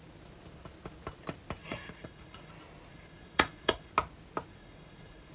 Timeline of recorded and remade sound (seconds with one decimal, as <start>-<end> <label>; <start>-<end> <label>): 0.0-1.6 recorded; 1.6-2.5 remade; 2.5-2.9 recorded; 2.9-3.9 remade; 3.9-4.5 recorded; 4.5-5.3 remade